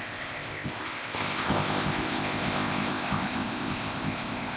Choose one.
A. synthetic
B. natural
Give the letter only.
A